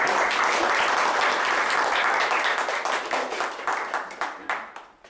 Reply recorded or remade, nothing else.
recorded